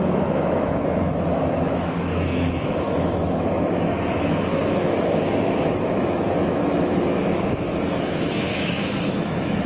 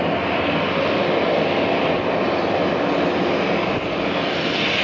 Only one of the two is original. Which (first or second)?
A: second